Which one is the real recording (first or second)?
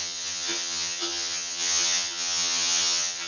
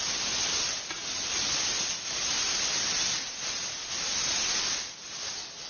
second